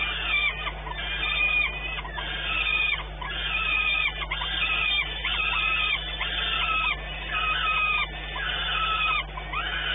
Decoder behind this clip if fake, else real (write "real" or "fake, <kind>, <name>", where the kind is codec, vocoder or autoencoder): real